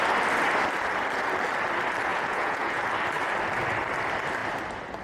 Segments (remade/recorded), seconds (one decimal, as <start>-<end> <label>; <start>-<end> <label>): 0.0-2.1 recorded; 2.1-2.8 remade; 2.8-5.0 recorded